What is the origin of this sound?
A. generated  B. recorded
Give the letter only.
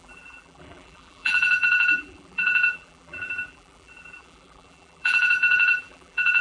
A